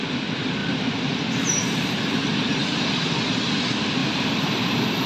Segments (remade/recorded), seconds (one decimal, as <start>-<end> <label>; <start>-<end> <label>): 0.0-0.6 recorded; 0.6-3.1 remade; 3.1-4.0 recorded; 4.0-5.1 remade